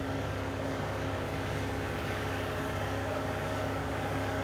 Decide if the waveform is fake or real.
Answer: fake